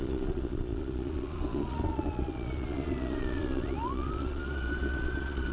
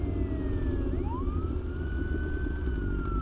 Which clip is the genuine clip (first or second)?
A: second